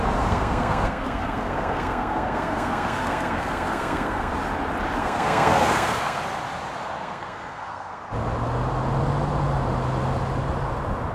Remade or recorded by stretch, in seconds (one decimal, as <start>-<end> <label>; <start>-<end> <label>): 0.0-4.3 remade; 4.3-5.0 recorded; 5.0-6.2 remade; 6.2-6.8 recorded; 6.8-8.0 remade; 8.0-11.1 recorded